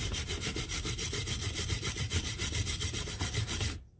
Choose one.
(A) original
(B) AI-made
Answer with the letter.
B